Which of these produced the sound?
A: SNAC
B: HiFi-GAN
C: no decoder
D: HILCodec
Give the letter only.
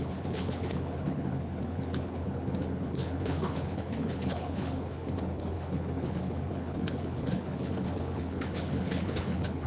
D